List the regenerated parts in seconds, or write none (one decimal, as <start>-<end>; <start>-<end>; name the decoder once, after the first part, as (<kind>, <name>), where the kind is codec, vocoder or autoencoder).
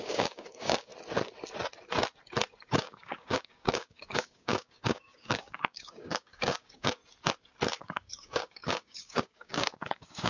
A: 0.0-0.9 (codec, DAC); 2.6-7.0; 7.8-10.3